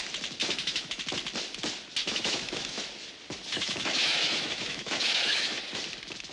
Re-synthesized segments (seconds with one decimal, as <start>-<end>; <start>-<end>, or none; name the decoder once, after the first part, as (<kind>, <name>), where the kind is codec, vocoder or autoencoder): 0.4-1.0 (autoencoder, DAC-VAE); 2.0-2.8; 3.5-5.6